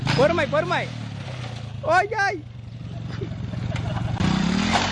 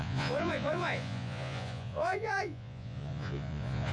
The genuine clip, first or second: first